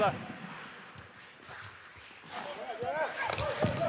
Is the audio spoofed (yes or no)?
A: no